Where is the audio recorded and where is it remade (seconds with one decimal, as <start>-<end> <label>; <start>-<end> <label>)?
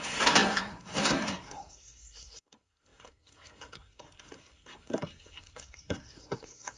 0.0-6.8 remade